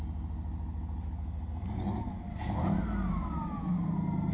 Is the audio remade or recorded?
recorded